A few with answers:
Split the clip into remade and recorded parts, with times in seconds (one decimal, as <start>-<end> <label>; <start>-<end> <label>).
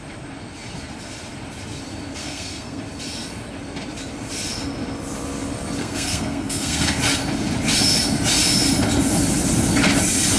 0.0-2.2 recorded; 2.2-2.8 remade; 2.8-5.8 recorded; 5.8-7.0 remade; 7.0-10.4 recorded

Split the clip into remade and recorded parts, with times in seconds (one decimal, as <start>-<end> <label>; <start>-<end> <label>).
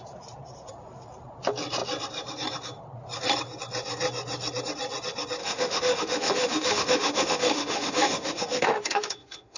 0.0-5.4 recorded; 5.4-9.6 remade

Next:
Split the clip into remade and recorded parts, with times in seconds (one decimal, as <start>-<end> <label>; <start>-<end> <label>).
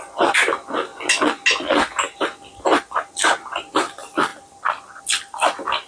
0.0-5.9 recorded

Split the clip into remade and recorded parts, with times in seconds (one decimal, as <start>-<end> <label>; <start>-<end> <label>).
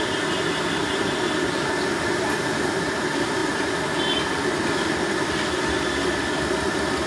0.0-7.1 recorded